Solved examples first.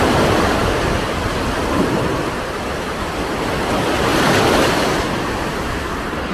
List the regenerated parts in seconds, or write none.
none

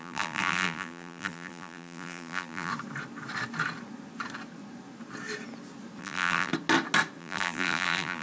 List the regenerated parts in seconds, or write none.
0.0-2.7; 6.0-6.5; 7.2-8.2

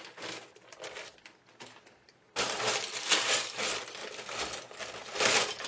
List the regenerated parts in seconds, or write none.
1.8-2.7

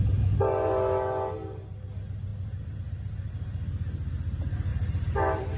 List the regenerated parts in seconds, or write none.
2.3-3.3; 4.7-5.6

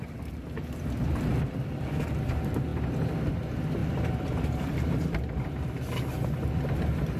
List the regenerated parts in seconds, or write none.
1.3-1.8; 3.8-5.9